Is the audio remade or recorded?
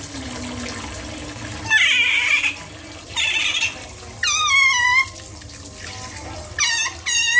recorded